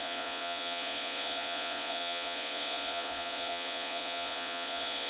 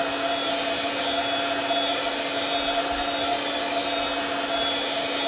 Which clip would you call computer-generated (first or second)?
first